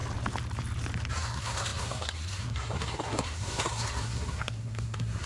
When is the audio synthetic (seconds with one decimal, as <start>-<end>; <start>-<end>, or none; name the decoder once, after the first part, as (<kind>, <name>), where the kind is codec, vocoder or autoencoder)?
1.1-5.3 (codec, SNAC)